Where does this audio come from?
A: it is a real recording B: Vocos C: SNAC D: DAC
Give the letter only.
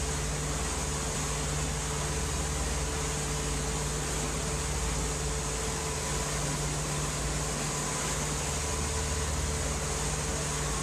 A